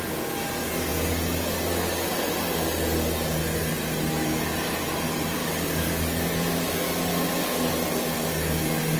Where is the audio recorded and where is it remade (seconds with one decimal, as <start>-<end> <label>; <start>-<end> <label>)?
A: 0.0-5.4 recorded; 5.4-5.9 remade; 5.9-7.1 recorded; 7.1-7.7 remade; 7.7-9.0 recorded